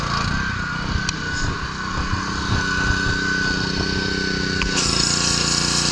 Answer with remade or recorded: recorded